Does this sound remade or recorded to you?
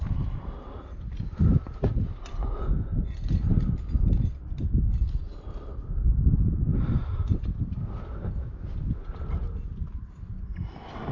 recorded